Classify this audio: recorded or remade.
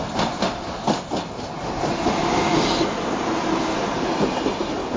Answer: recorded